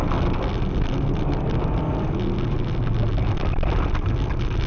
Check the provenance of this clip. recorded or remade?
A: recorded